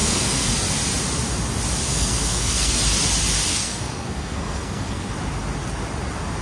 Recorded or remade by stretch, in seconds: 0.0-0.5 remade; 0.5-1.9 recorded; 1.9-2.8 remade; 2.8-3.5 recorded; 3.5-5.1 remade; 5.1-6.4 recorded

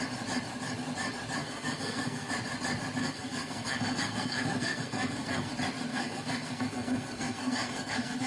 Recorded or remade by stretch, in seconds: 0.0-1.4 recorded; 1.4-2.3 remade; 2.3-3.0 recorded; 3.0-5.5 remade; 5.5-5.9 recorded; 5.9-8.3 remade

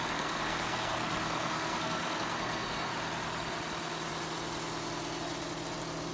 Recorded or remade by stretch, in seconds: 0.0-2.9 remade; 2.9-6.1 recorded

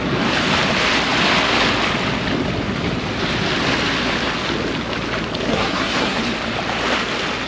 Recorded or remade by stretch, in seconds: 0.0-5.5 recorded; 5.5-6.2 remade; 6.2-7.5 recorded

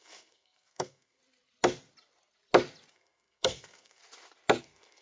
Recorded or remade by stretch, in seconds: 0.0-1.2 remade; 1.2-2.9 recorded; 2.9-4.0 remade; 4.0-4.6 recorded; 4.6-5.0 remade

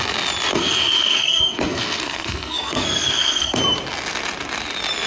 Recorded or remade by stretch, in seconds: 0.0-0.5 recorded; 0.5-3.6 remade; 3.6-5.1 recorded

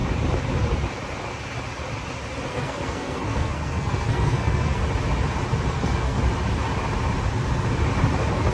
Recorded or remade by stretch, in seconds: 0.0-2.5 recorded; 2.5-4.8 remade; 4.8-5.7 recorded; 5.7-6.2 remade; 6.2-8.5 recorded